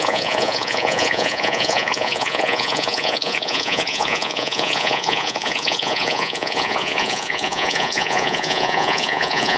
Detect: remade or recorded remade